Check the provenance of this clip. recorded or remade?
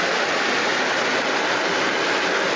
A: recorded